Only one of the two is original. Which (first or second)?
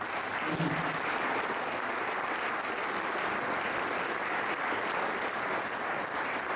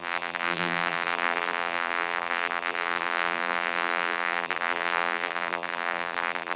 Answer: first